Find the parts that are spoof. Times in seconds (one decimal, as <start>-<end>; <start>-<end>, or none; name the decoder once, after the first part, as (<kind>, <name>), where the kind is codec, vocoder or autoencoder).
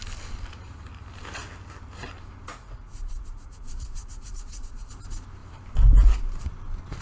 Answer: 2.5-4.9 (vocoder, Vocos)